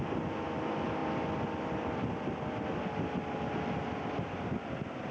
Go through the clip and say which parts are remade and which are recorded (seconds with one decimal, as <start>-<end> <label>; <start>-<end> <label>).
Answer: 0.0-5.1 recorded